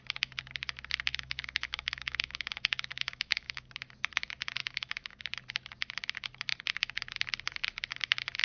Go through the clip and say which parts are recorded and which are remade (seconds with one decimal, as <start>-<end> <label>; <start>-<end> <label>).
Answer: 0.0-1.1 recorded; 1.1-3.7 remade; 3.7-4.6 recorded; 4.6-5.2 remade; 5.2-8.4 recorded